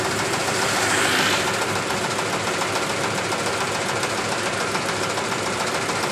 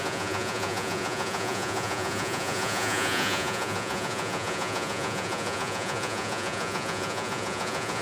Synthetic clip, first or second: second